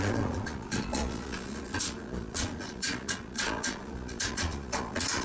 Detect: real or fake fake